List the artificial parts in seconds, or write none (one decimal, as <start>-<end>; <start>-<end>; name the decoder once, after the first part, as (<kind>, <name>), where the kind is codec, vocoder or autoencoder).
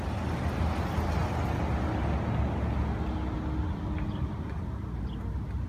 none